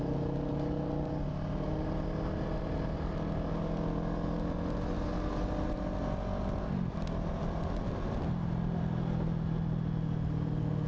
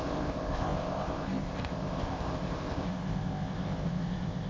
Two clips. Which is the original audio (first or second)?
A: first